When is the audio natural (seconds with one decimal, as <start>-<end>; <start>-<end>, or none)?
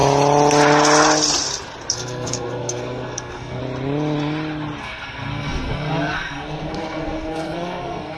0.0-1.9; 3.6-4.8